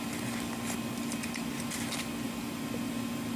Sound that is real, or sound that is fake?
real